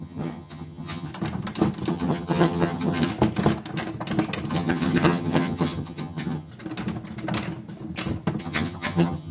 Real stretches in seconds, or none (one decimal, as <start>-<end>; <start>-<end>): 1.1-1.9; 3.1-4.5; 6.5-8.4